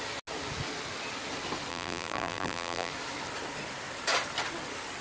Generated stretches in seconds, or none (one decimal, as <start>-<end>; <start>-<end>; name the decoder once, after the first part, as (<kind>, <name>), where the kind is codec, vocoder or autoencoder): 1.7-2.9 (vocoder, BigVGAN v2)